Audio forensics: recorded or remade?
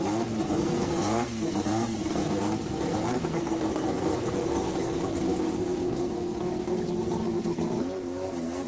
remade